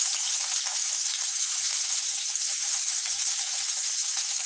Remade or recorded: remade